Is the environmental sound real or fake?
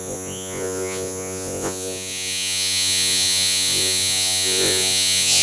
fake